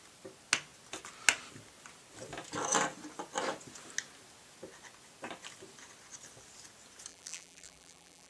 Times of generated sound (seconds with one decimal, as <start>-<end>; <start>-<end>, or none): 7.1-8.3